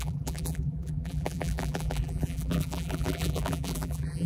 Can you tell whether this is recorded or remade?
remade